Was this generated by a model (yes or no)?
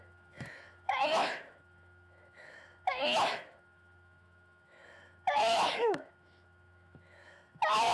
yes